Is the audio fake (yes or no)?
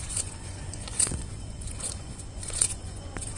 yes